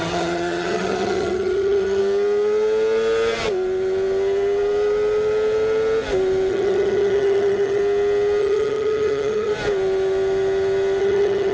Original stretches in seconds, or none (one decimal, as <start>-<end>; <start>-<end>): 2.0-6.5; 7.8-8.4; 9.5-11.0